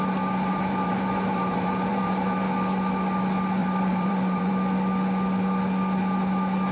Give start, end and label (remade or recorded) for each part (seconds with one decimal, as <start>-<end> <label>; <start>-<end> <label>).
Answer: 0.0-0.5 recorded; 0.5-2.4 remade; 2.4-3.6 recorded; 3.6-4.5 remade; 4.5-6.7 recorded